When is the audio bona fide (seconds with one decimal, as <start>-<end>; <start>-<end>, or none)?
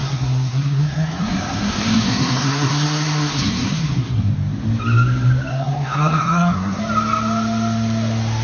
4.3-5.5; 6.8-8.4